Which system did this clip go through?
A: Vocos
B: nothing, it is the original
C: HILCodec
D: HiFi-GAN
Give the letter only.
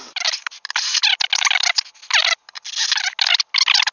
B